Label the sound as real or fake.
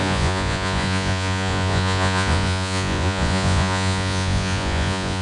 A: fake